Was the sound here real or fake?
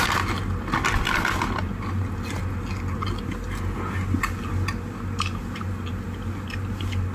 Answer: real